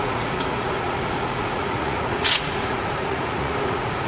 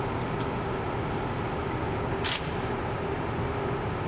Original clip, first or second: second